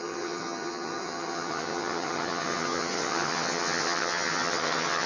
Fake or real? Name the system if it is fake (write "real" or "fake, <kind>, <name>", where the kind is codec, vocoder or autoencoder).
fake, vocoder, HiFi-GAN